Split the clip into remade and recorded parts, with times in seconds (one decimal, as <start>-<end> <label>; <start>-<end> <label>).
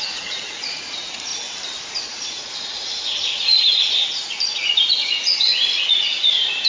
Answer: 0.0-1.3 remade; 1.3-2.0 recorded; 2.0-4.0 remade; 4.0-5.0 recorded; 5.0-6.7 remade